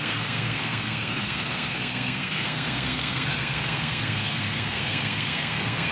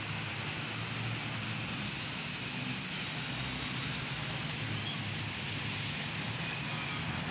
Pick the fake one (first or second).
first